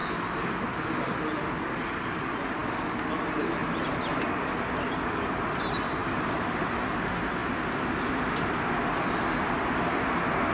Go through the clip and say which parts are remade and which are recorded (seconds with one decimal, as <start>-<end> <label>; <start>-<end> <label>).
0.0-6.0 recorded; 6.0-6.8 remade; 6.8-10.5 recorded